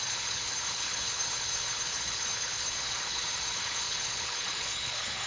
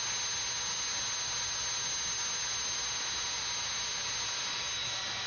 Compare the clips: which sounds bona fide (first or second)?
second